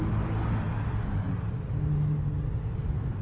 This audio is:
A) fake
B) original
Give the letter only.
B